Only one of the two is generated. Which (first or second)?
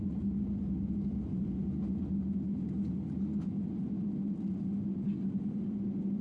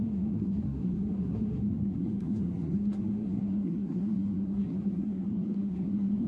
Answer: second